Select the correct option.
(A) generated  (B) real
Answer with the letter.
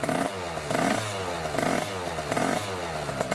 B